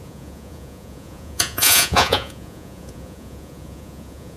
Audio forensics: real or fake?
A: fake